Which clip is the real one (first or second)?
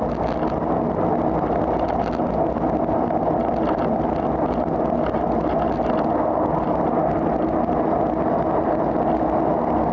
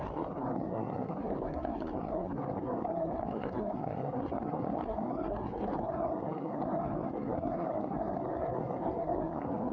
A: first